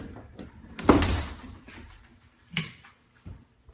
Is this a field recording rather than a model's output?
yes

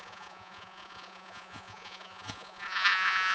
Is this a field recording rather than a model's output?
no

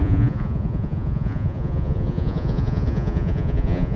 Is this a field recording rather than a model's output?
no